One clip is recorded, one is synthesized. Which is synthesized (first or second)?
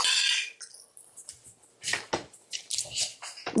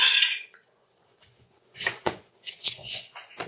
second